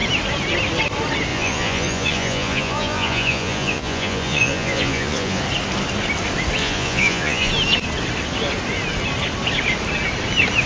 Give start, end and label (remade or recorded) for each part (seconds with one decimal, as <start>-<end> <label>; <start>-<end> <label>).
0.0-1.3 recorded; 1.3-5.4 remade; 5.4-6.6 recorded; 6.6-7.5 remade; 7.5-10.7 recorded